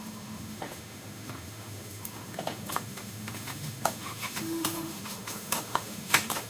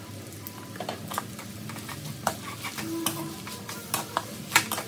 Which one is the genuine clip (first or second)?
second